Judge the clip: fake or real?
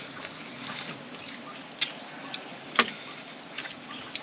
real